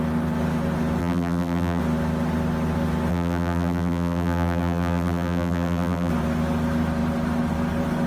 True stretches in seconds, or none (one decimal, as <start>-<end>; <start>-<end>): 0.0-1.0; 1.8-3.1; 6.1-8.1

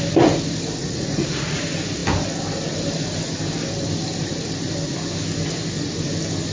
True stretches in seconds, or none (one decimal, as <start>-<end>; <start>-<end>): 0.0-0.8; 1.6-6.5

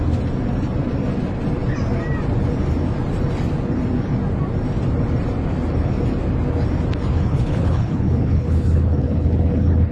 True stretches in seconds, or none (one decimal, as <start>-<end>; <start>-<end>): 0.0-7.1

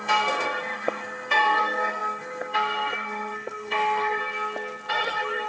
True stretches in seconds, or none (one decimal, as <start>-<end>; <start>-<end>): 4.2-4.9